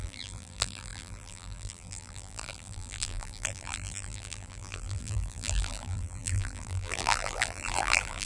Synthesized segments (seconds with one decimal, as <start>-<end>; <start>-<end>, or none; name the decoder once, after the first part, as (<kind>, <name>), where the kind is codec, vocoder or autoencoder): 0.0-8.3 (vocoder, BigVGAN v2)